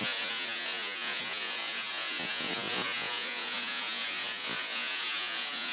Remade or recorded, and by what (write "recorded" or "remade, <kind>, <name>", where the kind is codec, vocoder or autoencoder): remade, vocoder, Vocos